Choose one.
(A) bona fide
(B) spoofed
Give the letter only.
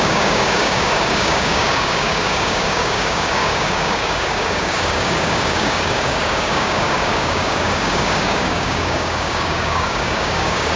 B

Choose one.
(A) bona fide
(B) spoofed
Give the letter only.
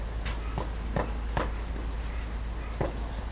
A